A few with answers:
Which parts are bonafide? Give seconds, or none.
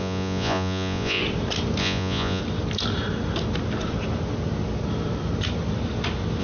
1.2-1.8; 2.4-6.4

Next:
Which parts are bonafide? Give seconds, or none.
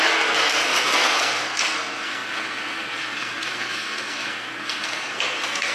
none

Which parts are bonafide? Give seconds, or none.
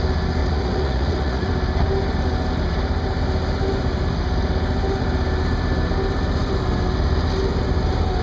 0.0-0.4; 1.5-8.2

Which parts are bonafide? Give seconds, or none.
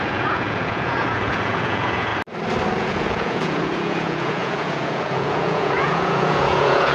2.1-2.7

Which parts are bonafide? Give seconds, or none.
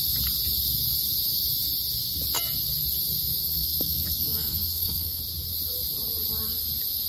0.0-3.4; 5.2-7.1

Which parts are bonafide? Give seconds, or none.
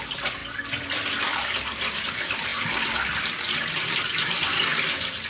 none